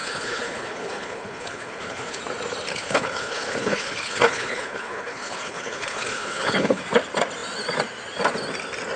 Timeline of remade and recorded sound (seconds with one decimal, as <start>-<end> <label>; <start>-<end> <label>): 0.0-2.2 remade; 2.2-2.7 recorded; 2.7-6.8 remade; 6.8-9.0 recorded